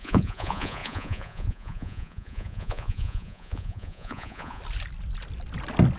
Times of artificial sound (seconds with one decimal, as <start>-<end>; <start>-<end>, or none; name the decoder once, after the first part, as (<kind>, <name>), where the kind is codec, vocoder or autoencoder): 0.0-4.6 (vocoder, Vocos)

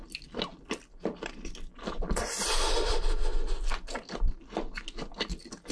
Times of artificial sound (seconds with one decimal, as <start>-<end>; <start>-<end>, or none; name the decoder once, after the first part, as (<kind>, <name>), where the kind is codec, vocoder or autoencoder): 0.5-3.2 (vocoder, BigVGAN v2)

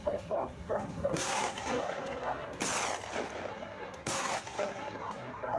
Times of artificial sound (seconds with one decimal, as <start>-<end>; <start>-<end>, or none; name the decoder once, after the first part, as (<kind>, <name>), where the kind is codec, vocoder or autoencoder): 0.0-2.6 (codec, SNAC); 3.5-5.6

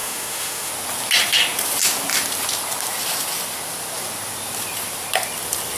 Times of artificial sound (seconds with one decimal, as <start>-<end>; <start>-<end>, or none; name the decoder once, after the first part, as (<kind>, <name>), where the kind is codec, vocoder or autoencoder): 0.0-0.7 (autoencoder, DAC-VAE)

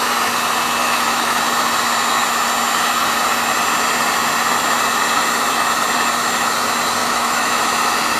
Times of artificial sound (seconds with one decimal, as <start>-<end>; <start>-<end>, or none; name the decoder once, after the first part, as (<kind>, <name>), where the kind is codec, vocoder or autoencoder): 0.8-1.4 (autoencoder, DAC-VAE); 7.0-7.6

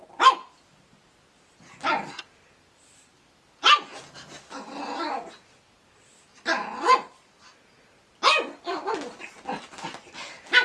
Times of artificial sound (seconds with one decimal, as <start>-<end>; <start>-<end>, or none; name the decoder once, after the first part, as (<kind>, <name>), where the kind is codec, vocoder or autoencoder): none

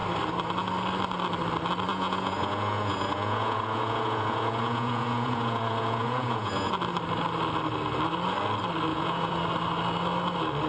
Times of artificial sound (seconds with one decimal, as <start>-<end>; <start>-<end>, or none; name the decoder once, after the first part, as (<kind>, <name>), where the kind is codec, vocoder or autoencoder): 1.9-6.7 (vocoder, Vocos); 8.9-9.4

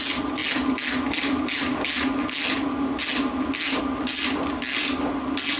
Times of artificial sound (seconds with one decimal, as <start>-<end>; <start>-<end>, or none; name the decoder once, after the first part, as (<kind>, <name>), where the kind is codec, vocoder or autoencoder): none